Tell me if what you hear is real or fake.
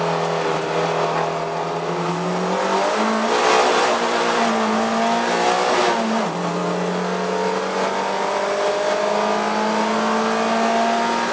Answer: real